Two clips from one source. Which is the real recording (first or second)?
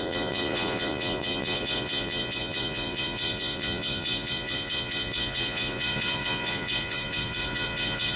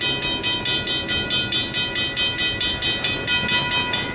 second